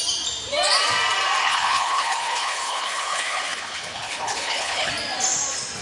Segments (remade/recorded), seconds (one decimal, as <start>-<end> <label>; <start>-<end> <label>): 0.0-1.4 recorded; 1.4-4.9 remade; 4.9-5.8 recorded